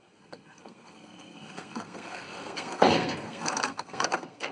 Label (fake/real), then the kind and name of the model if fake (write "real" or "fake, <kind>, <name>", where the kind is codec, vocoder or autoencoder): fake, codec, SNAC